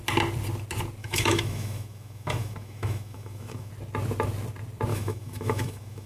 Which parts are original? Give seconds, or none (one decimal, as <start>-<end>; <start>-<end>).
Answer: 0.0-1.0; 3.7-4.9

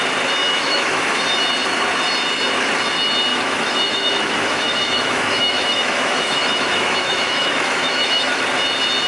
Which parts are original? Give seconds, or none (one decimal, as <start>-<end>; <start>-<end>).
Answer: 0.0-0.4; 1.2-3.3; 8.4-9.1

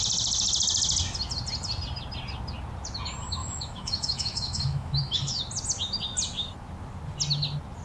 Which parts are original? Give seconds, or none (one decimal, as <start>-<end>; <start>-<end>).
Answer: 0.0-3.4; 5.4-7.8

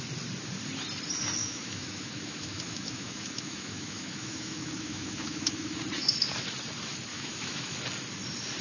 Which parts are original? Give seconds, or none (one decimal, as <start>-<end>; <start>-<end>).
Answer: 0.0-1.4; 5.8-7.1; 7.8-8.6

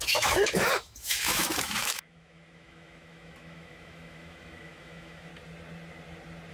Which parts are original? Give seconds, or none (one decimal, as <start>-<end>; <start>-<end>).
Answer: 5.3-6.5

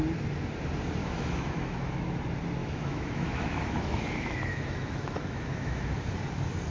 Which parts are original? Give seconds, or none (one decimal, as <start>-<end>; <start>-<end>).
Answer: 0.0-1.0; 2.2-2.6; 6.1-6.7

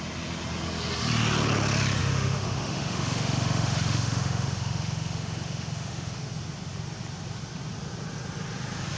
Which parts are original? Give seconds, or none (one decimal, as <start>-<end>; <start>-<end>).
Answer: 0.0-2.0; 6.2-9.0